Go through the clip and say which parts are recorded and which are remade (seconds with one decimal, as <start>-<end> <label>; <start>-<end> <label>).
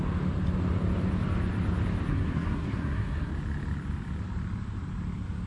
0.0-2.1 recorded; 2.1-3.3 remade; 3.3-5.5 recorded